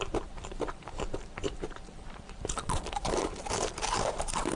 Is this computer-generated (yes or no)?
yes